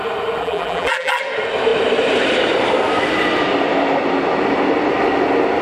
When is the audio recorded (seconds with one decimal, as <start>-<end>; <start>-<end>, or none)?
0.0-0.4; 1.2-5.6